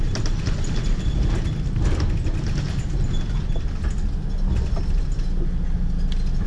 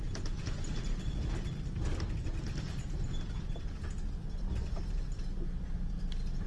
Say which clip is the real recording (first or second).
first